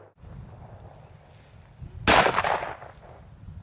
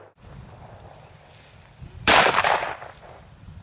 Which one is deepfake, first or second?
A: second